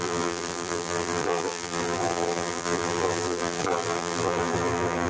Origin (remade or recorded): remade